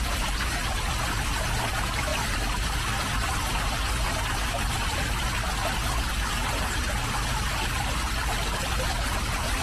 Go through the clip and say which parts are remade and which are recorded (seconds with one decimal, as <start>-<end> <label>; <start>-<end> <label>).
0.0-9.6 recorded